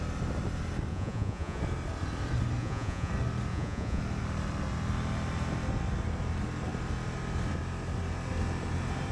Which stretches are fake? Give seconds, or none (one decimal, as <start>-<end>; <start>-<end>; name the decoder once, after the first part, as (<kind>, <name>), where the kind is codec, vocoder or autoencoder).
0.9-1.6 (vocoder, Vocos); 2.6-3.1; 3.5-4.0